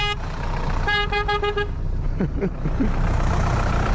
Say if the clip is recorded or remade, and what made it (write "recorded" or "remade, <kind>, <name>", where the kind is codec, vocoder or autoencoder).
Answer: remade, vocoder, BigVGAN v2